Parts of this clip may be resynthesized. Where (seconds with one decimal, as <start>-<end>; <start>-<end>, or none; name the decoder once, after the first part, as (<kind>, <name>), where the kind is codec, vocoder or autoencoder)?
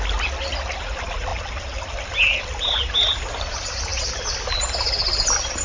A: none